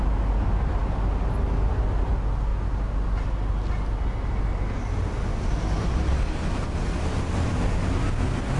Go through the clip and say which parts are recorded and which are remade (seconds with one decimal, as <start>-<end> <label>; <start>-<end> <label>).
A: 0.0-8.6 recorded